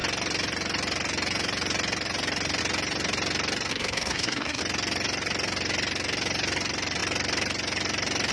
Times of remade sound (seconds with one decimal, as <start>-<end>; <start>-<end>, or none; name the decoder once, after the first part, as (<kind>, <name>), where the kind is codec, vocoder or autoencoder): 3.7-4.6 (codec, SNAC)

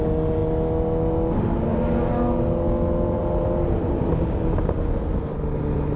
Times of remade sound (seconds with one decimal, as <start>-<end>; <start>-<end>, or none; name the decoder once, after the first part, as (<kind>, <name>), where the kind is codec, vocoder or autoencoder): none

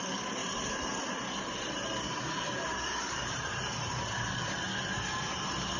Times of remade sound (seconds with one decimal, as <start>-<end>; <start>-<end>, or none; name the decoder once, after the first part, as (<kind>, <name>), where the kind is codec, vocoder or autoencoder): 0.4-3.9 (vocoder, BigVGAN v2)

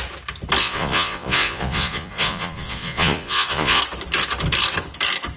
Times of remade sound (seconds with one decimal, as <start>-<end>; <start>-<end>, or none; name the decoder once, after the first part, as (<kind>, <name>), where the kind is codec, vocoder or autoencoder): 0.6-3.8 (vocoder, Vocos)

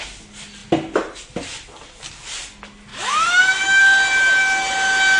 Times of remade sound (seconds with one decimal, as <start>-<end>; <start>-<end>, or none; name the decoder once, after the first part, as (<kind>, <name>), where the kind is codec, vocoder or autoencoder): 2.9-3.8 (autoencoder, DAC-VAE)

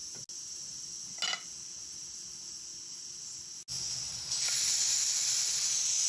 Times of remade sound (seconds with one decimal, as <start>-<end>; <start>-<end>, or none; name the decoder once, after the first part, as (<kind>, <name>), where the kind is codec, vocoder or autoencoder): none

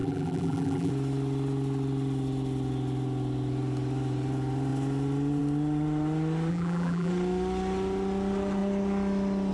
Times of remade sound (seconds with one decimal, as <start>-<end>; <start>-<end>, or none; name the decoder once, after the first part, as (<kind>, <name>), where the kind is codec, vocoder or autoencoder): 0.0-0.9 (vocoder, BigVGAN v2); 6.5-7.1